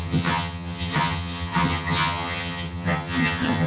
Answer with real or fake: fake